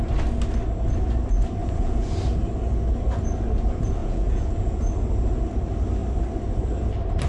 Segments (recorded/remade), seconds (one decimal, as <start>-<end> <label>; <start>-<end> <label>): 0.0-1.6 recorded; 1.6-2.1 remade; 2.1-4.0 recorded; 4.0-4.8 remade; 4.8-7.3 recorded